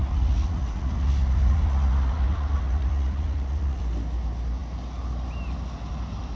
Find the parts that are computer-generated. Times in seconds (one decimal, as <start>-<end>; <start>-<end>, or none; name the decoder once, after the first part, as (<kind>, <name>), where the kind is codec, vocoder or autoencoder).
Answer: 0.0-3.8 (vocoder, Vocos)